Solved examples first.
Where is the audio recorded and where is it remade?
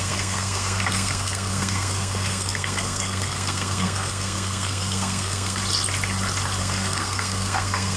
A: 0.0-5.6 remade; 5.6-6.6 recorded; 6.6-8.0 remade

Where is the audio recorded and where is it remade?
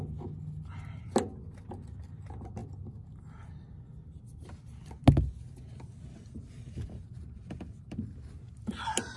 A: 0.0-9.2 recorded